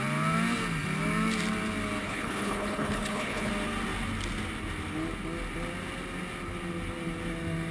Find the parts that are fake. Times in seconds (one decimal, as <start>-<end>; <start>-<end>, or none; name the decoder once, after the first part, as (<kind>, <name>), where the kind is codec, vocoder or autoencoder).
2.0-3.5 (codec, HILCodec)